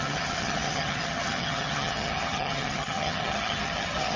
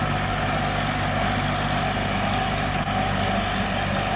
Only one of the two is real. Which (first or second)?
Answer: second